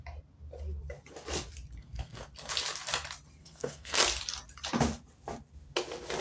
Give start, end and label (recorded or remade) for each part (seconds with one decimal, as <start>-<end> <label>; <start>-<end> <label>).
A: 0.0-1.8 recorded; 1.8-2.3 remade; 2.3-3.4 recorded; 3.4-4.0 remade; 4.0-6.2 recorded